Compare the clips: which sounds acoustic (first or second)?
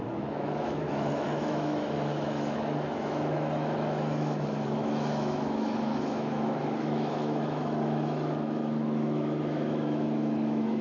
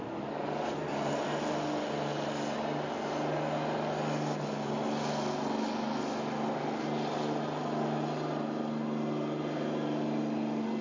second